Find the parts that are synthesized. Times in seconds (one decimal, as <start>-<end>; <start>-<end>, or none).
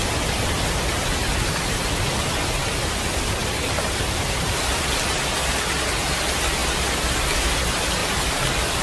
3.4-4.9; 8.0-8.8